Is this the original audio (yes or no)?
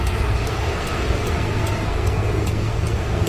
no